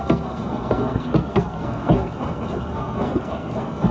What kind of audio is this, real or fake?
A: fake